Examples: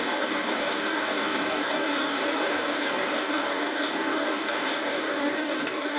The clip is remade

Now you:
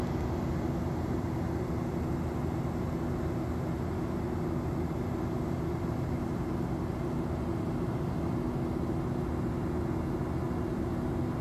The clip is recorded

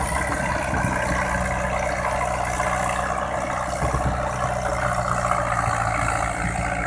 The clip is recorded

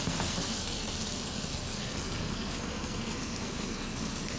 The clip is remade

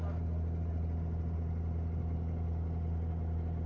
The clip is recorded